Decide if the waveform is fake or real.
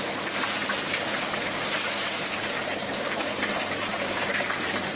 fake